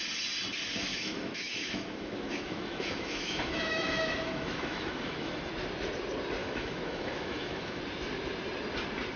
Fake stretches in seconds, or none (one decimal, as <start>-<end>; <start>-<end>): 0.9-5.5; 6.4-7.8